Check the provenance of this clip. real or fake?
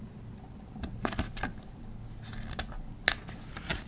real